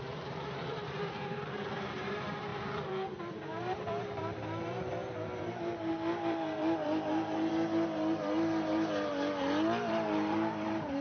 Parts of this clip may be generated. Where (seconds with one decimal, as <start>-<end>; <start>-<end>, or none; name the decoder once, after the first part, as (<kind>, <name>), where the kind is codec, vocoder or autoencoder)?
0.0-9.1 (vocoder, BigVGAN v2); 9.9-11.0